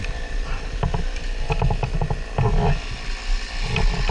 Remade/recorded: recorded